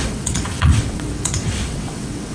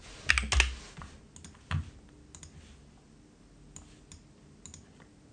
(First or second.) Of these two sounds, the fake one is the first